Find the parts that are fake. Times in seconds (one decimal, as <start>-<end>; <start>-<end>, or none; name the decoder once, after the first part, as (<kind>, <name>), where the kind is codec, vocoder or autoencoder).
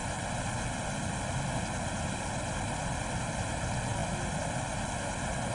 none